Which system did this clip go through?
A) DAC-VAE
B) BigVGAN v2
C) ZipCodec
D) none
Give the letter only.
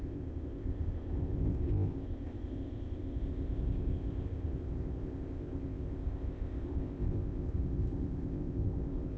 C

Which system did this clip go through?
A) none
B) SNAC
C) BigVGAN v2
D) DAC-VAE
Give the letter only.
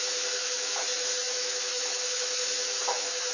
D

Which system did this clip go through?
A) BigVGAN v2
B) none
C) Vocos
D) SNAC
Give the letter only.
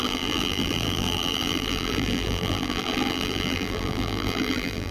A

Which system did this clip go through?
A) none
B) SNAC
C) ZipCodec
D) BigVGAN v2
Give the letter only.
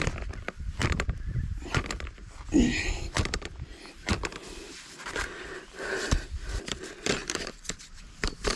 D